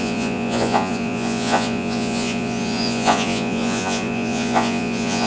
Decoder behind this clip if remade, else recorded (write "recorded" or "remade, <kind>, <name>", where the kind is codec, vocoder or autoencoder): remade, vocoder, Vocos